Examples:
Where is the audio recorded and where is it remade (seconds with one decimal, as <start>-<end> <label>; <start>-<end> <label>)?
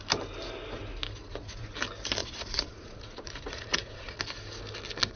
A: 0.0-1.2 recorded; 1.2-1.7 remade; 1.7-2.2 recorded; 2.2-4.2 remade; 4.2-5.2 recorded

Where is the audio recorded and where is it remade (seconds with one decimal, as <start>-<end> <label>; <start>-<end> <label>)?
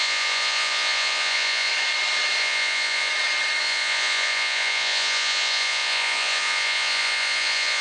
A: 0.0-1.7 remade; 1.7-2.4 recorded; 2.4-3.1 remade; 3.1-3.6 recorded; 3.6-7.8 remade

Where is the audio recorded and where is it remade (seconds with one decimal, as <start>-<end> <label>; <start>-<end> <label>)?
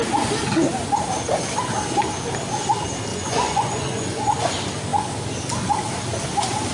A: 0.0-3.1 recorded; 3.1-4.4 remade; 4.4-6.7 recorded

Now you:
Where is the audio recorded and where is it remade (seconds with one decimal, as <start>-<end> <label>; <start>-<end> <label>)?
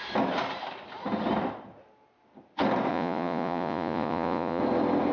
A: 0.0-2.9 recorded; 2.9-4.6 remade; 4.6-5.1 recorded